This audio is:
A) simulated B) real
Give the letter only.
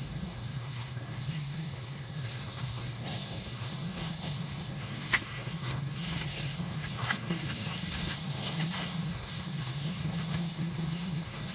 A